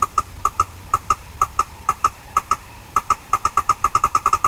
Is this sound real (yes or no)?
no